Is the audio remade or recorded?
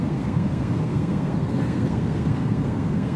remade